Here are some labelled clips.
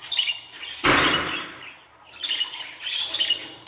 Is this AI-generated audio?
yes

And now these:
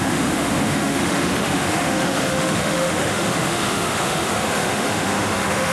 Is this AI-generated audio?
yes